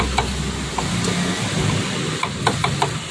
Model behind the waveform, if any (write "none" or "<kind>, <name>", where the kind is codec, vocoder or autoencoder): none